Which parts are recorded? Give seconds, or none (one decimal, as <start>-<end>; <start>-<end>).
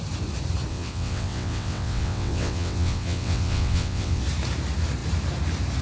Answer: 0.0-0.7; 4.2-5.8